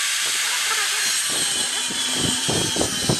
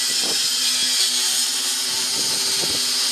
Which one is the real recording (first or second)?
second